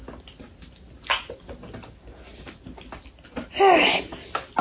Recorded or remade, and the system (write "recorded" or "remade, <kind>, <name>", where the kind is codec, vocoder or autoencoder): recorded